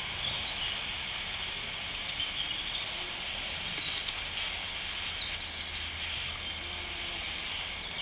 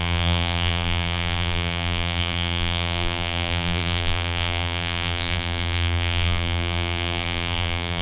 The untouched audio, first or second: first